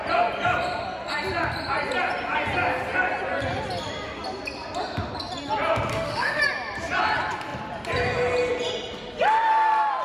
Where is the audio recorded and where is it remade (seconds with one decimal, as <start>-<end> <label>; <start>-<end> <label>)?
0.0-5.9 recorded; 5.9-6.4 remade; 6.4-10.0 recorded